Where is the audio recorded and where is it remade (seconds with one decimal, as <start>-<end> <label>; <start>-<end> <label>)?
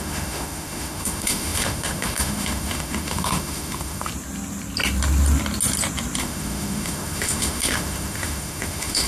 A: 0.0-4.1 remade; 4.1-6.2 recorded; 6.2-9.1 remade